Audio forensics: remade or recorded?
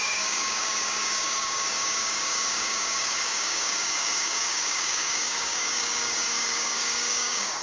remade